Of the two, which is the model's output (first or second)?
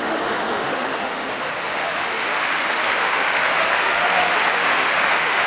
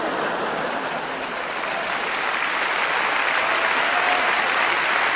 first